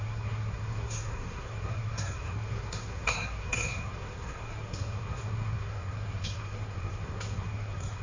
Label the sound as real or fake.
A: fake